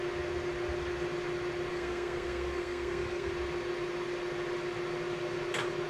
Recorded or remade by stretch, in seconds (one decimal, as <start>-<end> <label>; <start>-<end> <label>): 0.0-1.7 recorded; 1.7-3.3 remade; 3.3-5.9 recorded